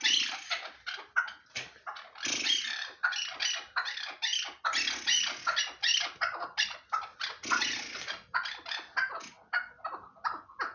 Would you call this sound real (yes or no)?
yes